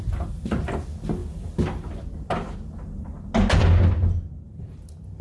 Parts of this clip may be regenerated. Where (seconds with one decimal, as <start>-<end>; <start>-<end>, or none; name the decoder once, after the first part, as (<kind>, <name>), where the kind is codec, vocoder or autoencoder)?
none